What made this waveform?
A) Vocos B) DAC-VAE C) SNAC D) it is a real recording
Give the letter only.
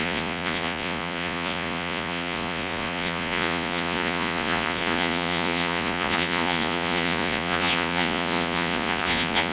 A